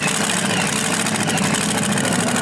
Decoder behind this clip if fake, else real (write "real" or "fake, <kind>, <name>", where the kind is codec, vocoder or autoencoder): real